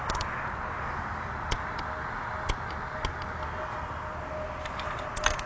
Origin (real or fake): real